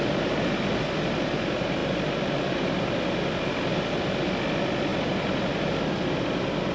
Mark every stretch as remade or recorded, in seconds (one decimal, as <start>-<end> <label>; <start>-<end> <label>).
0.0-6.7 recorded